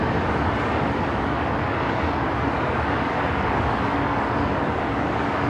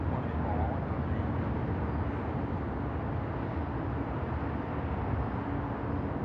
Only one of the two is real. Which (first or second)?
second